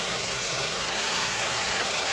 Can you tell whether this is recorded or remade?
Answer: remade